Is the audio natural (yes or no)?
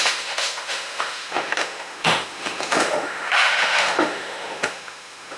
no